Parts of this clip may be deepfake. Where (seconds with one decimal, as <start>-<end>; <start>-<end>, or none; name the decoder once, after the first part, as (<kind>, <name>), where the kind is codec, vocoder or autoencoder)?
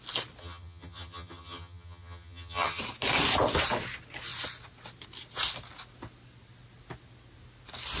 0.4-2.8 (vocoder, HiFi-GAN)